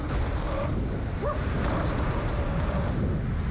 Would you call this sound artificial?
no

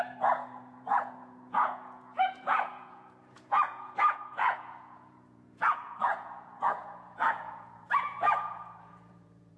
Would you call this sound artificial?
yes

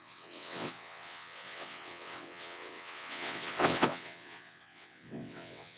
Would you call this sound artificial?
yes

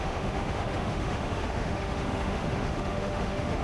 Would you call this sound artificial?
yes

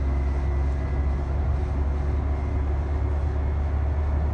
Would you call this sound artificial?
no